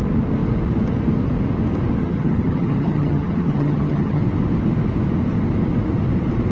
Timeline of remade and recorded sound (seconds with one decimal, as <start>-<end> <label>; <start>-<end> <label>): 0.0-2.0 recorded; 2.0-4.2 remade; 4.2-6.5 recorded

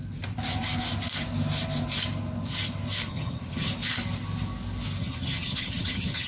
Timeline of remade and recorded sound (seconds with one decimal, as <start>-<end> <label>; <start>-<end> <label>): 0.0-3.1 recorded; 3.1-3.7 remade; 3.7-5.0 recorded; 5.0-6.3 remade